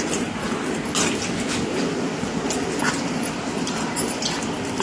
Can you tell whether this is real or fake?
fake